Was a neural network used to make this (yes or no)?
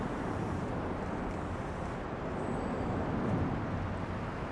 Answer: no